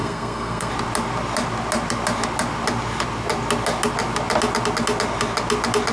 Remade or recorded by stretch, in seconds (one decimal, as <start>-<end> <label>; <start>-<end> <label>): 0.0-0.7 remade; 0.7-5.9 recorded